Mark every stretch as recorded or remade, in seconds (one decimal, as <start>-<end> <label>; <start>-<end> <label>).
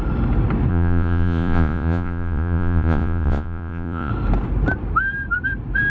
0.0-0.7 recorded; 0.7-4.1 remade; 4.1-5.9 recorded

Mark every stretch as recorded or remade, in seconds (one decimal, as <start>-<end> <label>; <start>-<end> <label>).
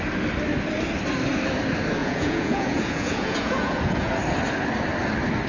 0.0-2.0 recorded; 2.0-4.1 remade; 4.1-5.5 recorded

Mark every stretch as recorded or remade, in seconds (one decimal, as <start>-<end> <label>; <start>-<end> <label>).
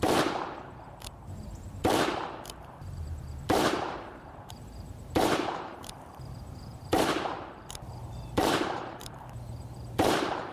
0.0-10.5 remade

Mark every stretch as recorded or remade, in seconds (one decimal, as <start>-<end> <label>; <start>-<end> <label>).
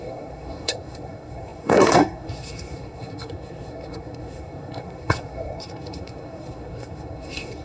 0.0-7.6 remade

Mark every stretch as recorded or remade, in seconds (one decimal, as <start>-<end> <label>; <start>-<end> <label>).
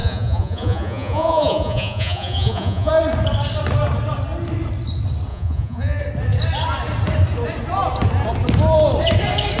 0.0-2.9 remade; 2.9-5.3 recorded; 5.3-6.0 remade; 6.0-9.6 recorded